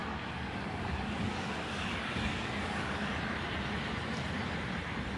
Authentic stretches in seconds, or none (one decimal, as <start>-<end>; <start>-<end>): 3.1-5.2